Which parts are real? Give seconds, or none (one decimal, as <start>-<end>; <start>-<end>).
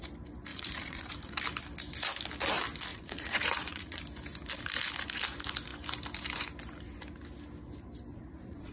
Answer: 0.0-0.5; 1.1-2.9; 4.0-8.1